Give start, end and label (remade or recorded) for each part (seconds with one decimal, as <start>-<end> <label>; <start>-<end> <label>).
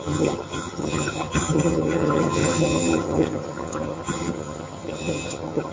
0.0-5.7 remade